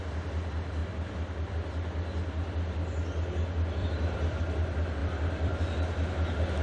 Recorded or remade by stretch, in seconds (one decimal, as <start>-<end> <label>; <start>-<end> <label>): 0.0-0.8 recorded; 0.8-1.5 remade; 1.5-3.8 recorded; 3.8-4.4 remade; 4.4-5.0 recorded; 5.0-5.6 remade; 5.6-6.6 recorded